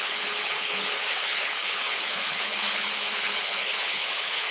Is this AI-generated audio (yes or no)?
yes